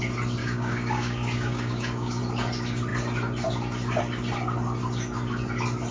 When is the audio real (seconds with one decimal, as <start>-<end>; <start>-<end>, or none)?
0.0-0.4; 2.2-5.9